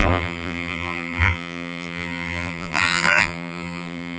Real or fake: fake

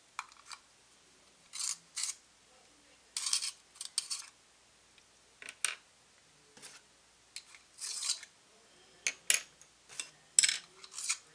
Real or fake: real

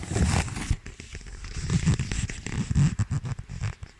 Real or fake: real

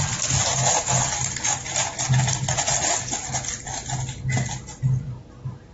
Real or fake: real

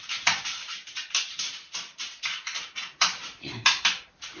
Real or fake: fake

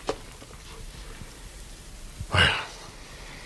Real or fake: real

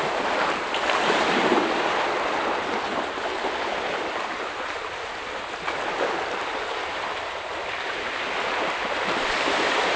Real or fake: fake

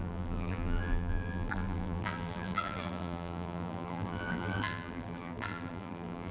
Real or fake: fake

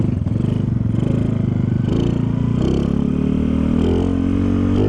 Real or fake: real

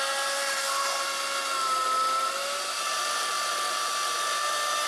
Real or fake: real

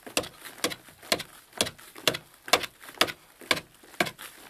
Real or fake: real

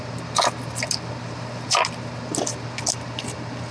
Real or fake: real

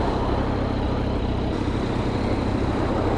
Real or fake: real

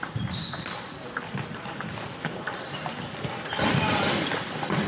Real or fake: fake